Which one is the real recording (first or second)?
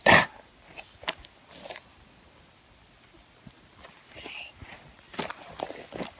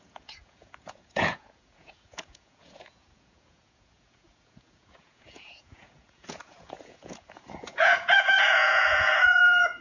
first